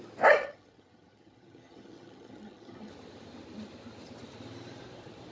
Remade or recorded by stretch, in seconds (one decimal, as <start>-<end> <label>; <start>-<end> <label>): 0.0-0.4 recorded; 0.4-2.9 remade; 2.9-5.3 recorded

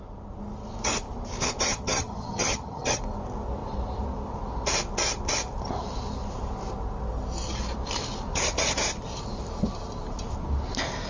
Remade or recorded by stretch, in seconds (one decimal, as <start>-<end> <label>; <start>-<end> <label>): 0.0-1.7 recorded; 1.7-3.0 remade; 3.0-11.1 recorded

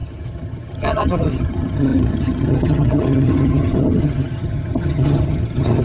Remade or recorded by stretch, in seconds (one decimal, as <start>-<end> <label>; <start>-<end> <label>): 0.0-5.8 remade